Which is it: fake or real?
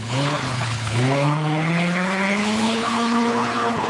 fake